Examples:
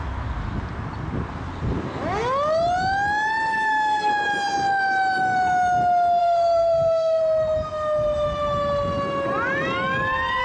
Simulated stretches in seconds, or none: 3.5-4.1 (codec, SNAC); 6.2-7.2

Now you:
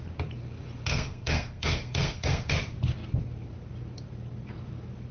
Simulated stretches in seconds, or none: 0.9-2.5 (codec, SNAC)

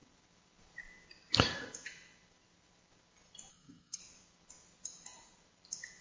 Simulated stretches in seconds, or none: 3.5-4.0 (codec, SNAC)

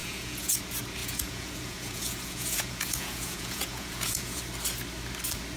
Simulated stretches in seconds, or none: 0.0-0.6 (vocoder, Vocos); 1.0-4.4

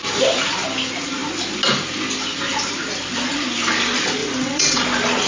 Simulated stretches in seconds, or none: 4.2-4.8 (vocoder, WaveNeXt)

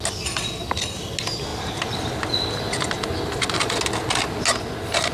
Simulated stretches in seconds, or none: none

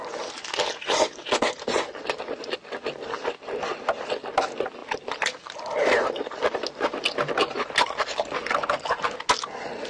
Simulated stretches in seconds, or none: none